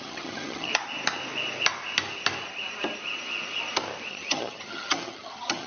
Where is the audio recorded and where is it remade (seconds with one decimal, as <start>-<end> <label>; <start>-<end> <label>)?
0.0-0.7 remade; 0.7-4.1 recorded; 4.1-5.7 remade